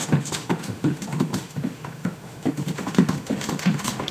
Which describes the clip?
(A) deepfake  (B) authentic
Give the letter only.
A